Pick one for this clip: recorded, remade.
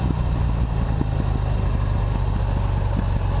recorded